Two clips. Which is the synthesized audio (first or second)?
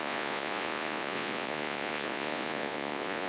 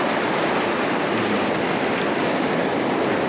first